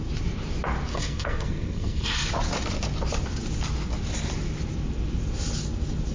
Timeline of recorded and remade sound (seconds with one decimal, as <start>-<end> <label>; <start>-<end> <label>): 0.0-0.9 recorded; 0.9-2.3 remade; 2.3-6.1 recorded